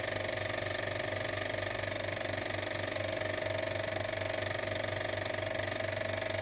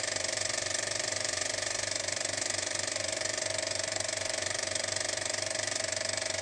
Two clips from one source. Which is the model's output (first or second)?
second